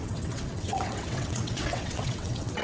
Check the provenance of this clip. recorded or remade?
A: remade